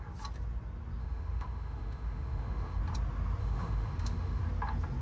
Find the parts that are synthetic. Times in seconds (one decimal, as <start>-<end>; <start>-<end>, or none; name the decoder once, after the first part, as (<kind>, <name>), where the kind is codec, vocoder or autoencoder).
1.0-2.8 (autoencoder, DAC-VAE); 3.4-4.4